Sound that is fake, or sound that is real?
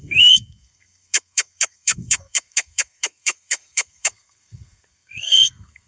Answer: fake